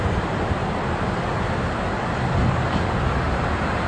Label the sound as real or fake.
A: fake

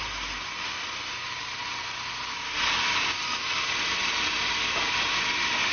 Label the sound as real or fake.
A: real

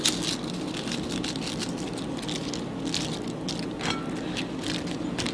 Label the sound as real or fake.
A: real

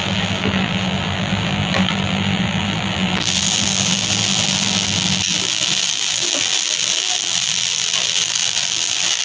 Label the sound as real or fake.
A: fake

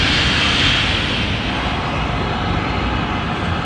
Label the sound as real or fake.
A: real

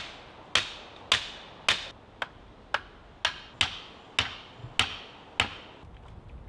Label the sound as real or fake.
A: real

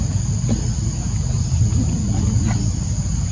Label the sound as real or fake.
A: real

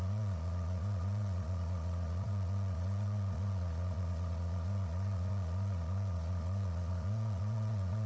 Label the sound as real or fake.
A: fake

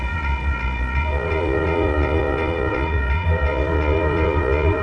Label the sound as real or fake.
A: fake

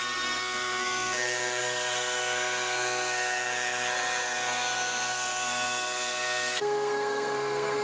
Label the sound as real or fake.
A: fake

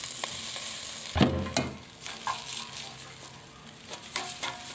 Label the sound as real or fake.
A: real